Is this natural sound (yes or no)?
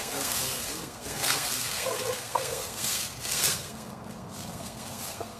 no